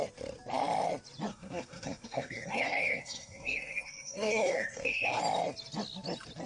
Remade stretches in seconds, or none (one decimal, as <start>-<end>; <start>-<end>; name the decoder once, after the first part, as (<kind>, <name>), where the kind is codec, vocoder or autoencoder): 1.3-5.2 (codec, SNAC)